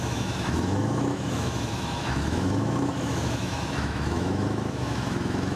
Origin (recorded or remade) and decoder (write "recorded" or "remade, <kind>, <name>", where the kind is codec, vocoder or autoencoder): remade, autoencoder, DAC-VAE